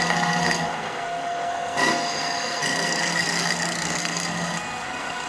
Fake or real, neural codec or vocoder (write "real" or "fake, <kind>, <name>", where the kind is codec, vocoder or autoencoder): fake, codec, SNAC